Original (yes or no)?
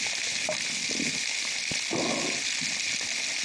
yes